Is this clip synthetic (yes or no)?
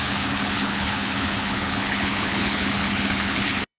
yes